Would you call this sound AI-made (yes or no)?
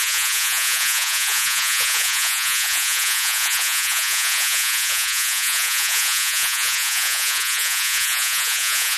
yes